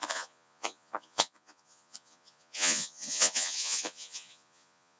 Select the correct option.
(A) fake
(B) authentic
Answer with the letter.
A